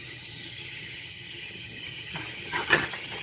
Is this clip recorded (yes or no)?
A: no